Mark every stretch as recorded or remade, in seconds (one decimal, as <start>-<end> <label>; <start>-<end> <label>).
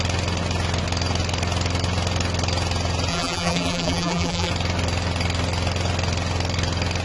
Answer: 0.0-3.1 recorded; 3.1-4.5 remade; 4.5-7.0 recorded